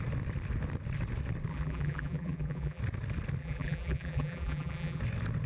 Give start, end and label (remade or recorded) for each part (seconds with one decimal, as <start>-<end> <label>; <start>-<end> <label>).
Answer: 0.0-1.5 recorded; 1.5-2.8 remade; 2.8-3.4 recorded; 3.4-5.0 remade; 5.0-5.5 recorded